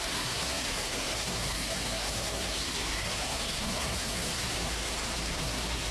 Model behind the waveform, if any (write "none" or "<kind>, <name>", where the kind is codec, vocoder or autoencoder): codec, SNAC